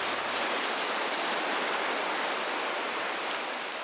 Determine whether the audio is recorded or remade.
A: recorded